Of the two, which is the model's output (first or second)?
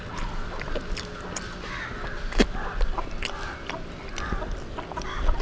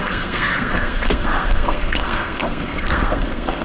second